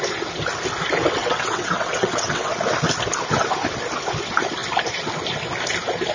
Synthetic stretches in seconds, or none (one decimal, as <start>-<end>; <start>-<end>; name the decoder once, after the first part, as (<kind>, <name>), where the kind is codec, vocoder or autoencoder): 1.0-2.5 (vocoder, WaveNeXt)